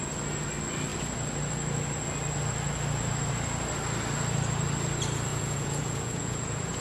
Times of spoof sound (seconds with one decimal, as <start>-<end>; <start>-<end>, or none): 5.3-6.8